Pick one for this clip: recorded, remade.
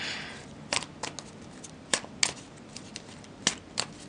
recorded